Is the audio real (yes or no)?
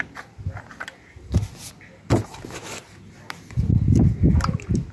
yes